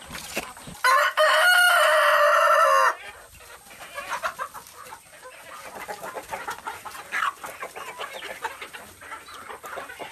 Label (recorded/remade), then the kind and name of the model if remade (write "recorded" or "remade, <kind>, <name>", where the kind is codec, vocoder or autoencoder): recorded